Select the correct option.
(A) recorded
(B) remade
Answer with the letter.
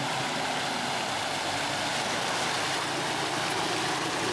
A